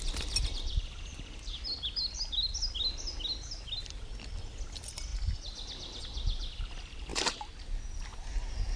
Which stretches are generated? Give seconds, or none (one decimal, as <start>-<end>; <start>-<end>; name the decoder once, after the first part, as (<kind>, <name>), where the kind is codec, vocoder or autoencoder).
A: none